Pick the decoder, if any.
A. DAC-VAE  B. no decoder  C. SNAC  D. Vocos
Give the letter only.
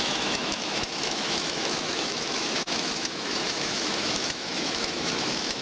A